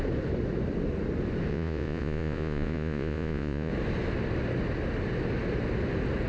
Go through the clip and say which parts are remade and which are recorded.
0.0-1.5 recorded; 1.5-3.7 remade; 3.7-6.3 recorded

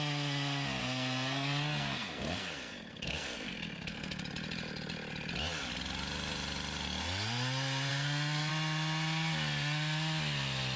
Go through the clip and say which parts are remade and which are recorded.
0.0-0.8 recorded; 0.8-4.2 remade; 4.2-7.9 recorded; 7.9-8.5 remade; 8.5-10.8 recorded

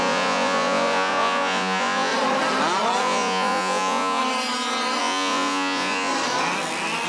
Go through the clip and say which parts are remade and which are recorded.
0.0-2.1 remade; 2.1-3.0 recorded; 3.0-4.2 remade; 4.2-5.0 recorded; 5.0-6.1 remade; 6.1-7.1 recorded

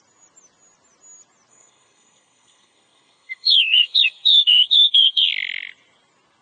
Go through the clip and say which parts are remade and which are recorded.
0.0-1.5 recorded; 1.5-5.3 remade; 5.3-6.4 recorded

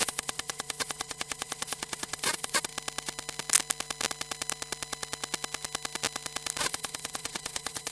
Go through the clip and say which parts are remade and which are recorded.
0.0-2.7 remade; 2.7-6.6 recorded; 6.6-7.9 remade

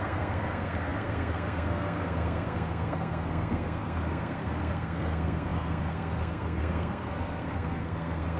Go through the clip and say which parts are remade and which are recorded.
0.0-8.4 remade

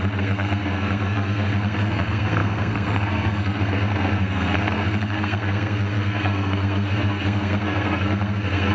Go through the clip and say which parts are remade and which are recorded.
0.0-8.7 remade